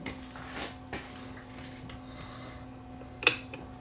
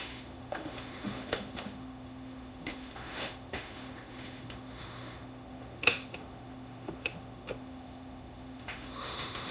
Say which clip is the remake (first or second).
second